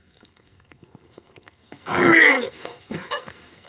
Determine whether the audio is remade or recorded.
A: remade